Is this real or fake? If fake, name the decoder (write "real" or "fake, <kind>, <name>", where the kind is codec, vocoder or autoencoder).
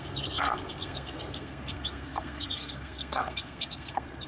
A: fake, codec, SNAC